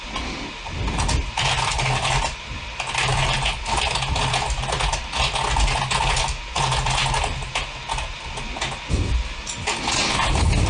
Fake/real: real